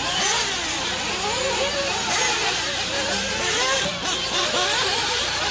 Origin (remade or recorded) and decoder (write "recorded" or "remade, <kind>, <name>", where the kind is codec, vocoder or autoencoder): recorded